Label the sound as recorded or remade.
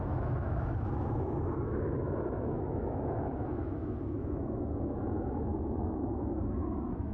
remade